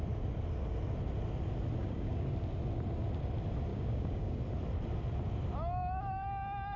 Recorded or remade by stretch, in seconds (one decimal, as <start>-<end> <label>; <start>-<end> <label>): 0.0-1.8 recorded; 1.8-2.3 remade; 2.3-3.7 recorded; 3.7-4.4 remade; 4.4-6.8 recorded